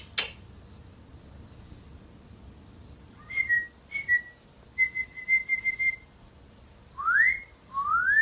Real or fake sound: real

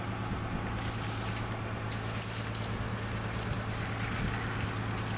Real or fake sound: real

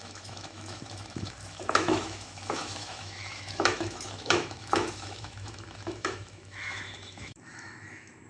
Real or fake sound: fake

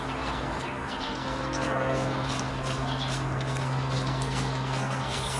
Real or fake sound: fake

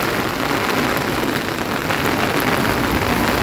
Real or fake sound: real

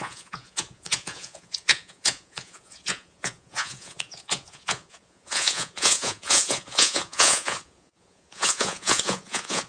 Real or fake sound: fake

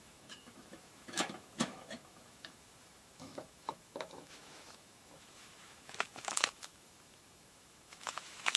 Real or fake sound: fake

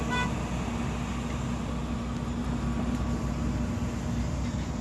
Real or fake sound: real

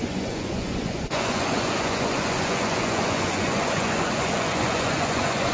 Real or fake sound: fake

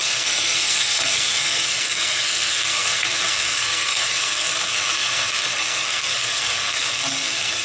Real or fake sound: fake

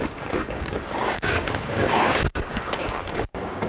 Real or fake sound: fake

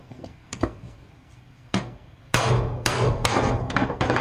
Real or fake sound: fake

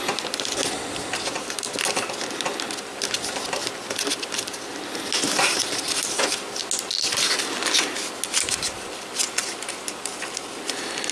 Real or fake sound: real